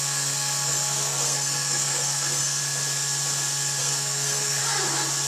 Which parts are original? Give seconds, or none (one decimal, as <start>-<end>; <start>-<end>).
2.6-3.8; 4.6-5.3